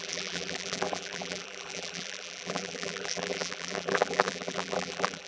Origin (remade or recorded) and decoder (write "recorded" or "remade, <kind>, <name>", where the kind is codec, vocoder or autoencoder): remade, vocoder, BigVGAN v2